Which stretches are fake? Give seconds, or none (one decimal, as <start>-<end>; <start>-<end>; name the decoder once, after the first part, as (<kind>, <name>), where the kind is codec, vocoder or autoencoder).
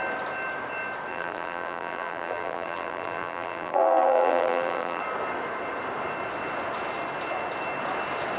1.1-5.0 (vocoder, BigVGAN v2)